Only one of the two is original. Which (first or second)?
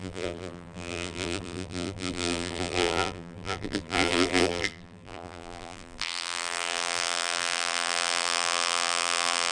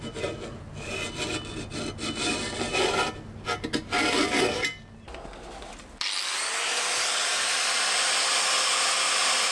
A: second